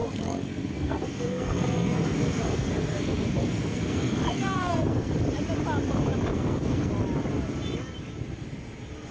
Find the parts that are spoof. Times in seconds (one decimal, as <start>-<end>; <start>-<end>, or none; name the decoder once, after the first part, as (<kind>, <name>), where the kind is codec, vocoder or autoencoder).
0.0-5.1 (codec, SNAC); 6.3-6.9